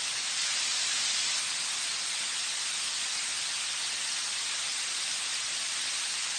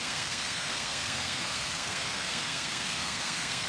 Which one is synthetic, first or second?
second